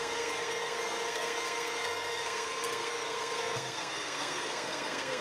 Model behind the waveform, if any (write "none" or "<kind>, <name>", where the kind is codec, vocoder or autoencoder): codec, SNAC